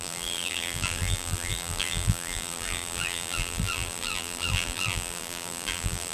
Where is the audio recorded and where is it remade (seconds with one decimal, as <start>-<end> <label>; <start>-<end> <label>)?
0.0-6.1 remade